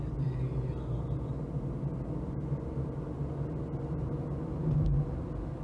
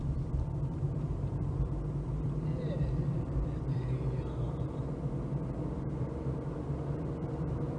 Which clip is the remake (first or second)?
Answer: second